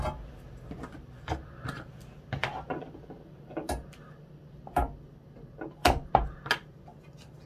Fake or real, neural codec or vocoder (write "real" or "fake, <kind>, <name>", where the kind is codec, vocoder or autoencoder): real